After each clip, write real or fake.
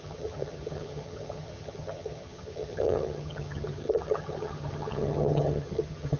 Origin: fake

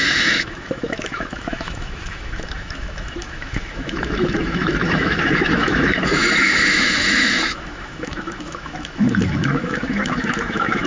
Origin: fake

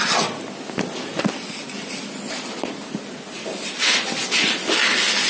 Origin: real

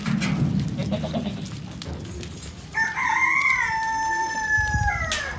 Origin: real